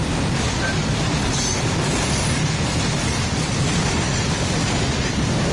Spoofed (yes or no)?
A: no